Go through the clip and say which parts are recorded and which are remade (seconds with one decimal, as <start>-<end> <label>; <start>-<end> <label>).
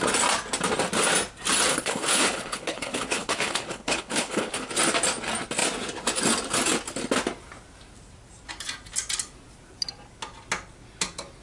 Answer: 0.0-1.7 recorded; 1.7-4.7 remade; 4.7-11.4 recorded